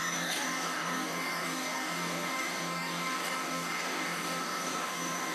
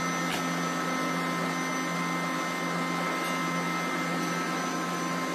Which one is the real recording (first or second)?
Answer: second